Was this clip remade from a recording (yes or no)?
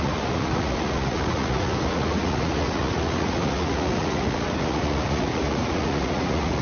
yes